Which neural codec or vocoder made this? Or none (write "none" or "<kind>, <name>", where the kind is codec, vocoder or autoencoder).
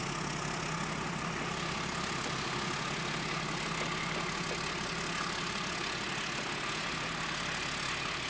none